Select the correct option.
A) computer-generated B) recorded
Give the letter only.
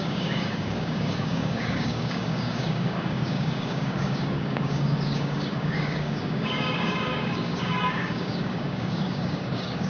A